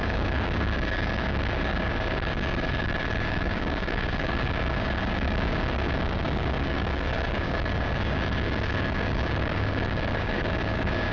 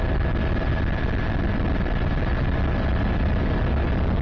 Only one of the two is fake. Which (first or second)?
first